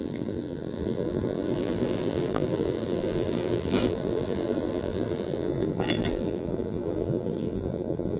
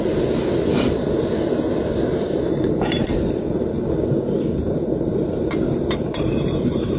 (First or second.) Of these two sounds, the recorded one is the second